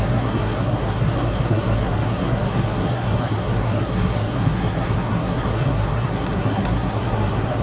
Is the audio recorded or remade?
remade